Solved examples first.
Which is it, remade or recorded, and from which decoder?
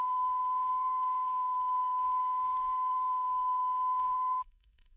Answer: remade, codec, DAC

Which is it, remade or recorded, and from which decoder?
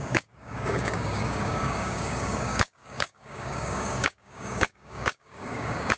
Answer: remade, codec, DAC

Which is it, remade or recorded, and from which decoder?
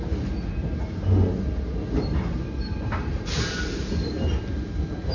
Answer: recorded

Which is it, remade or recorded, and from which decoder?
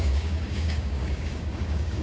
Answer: remade, codec, DAC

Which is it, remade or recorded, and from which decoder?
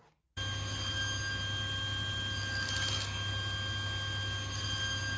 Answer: recorded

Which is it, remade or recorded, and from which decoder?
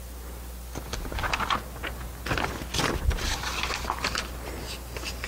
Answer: recorded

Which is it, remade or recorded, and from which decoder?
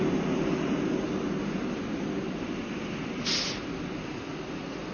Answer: recorded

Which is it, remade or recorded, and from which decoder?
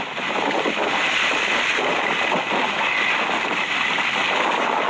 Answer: recorded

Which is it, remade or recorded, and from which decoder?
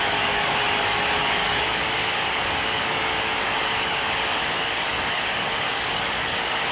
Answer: remade, codec, DAC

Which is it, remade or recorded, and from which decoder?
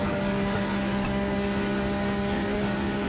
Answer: remade, codec, DAC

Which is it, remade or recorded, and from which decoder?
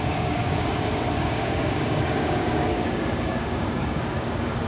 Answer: remade, codec, DAC